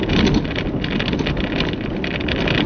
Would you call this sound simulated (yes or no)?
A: no